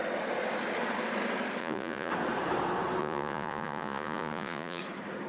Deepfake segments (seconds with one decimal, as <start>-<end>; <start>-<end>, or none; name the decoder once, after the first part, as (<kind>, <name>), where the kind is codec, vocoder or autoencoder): 1.6-2.1 (vocoder, Vocos); 3.0-4.8